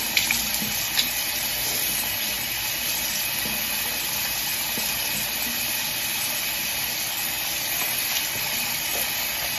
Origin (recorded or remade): recorded